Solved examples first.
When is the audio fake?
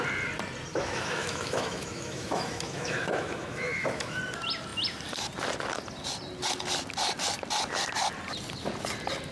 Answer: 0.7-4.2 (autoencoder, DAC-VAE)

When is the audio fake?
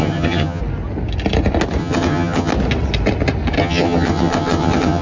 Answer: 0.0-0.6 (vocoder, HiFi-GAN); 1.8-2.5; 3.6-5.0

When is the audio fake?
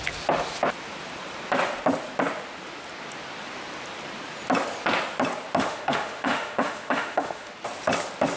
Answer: 5.6-7.5 (autoencoder, DAC-VAE)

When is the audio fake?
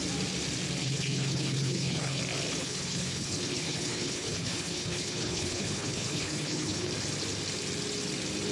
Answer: 0.8-2.2 (codec, HILCodec); 2.6-6.9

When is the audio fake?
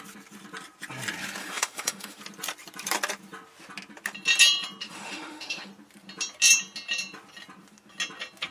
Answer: 1.4-2.2 (autoencoder, DAC-VAE); 4.8-5.7